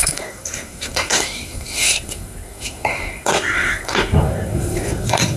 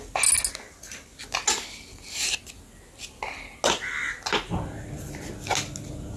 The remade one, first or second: first